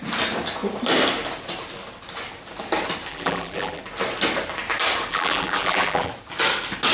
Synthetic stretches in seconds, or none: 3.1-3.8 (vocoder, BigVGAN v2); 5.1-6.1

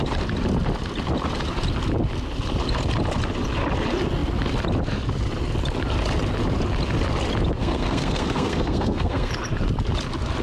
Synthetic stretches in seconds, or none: 7.6-9.3 (codec, SNAC)

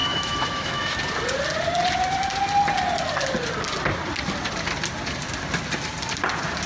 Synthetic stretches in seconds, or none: 0.0-1.0 (autoencoder, DAC-VAE)